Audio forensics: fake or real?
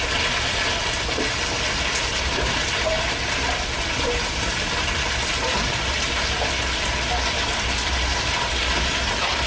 real